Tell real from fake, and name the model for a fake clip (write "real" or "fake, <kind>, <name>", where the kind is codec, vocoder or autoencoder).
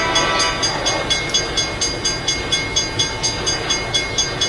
real